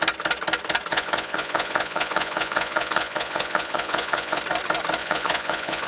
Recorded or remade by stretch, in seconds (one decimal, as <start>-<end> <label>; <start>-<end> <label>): 0.0-0.9 recorded; 0.9-4.4 remade; 4.4-5.0 recorded; 5.0-5.9 remade